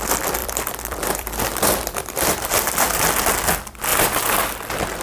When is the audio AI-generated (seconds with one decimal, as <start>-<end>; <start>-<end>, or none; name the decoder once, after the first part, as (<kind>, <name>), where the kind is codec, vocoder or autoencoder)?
0.4-2.5 (vocoder, BigVGAN v2); 3.9-4.5